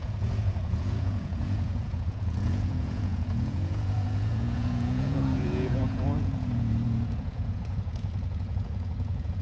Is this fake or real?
fake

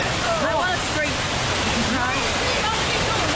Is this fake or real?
real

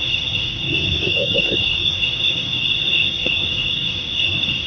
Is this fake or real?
fake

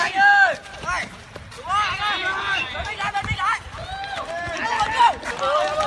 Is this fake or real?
real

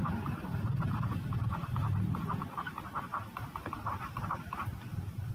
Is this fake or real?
fake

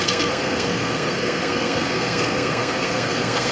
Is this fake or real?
fake